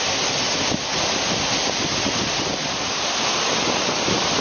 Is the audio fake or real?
real